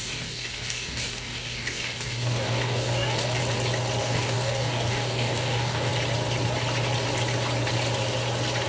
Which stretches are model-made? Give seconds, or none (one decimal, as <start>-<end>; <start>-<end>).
0.0-3.4; 4.0-5.9